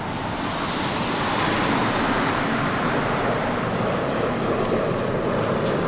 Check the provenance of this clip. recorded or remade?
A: recorded